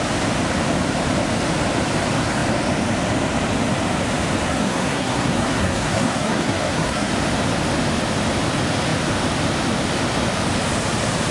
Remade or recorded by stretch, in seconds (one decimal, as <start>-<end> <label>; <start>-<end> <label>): 0.0-4.4 recorded; 4.4-7.1 remade; 7.1-11.3 recorded